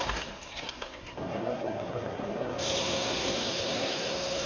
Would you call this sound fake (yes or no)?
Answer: yes